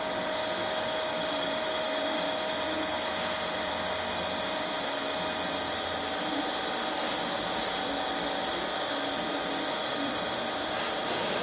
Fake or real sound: real